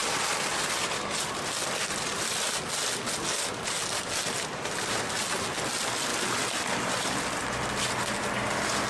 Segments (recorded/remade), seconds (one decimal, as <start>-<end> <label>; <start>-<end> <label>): 0.0-0.5 remade; 0.5-1.6 recorded; 1.6-2.5 remade; 2.5-6.1 recorded; 6.1-7.4 remade; 7.4-8.9 recorded